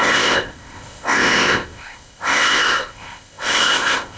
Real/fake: fake